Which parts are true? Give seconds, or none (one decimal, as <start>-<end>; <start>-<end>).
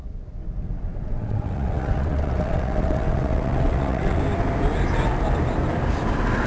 0.0-0.9; 4.2-6.5